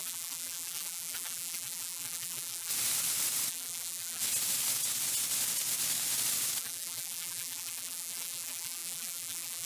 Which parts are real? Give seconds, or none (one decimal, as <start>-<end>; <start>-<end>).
2.7-3.5; 4.2-6.6

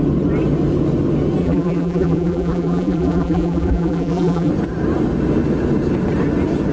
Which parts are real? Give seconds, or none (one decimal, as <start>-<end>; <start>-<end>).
0.0-1.4; 4.5-6.7

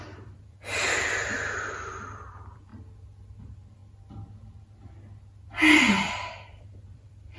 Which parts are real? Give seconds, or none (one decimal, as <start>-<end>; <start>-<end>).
2.7-3.4; 3.8-6.1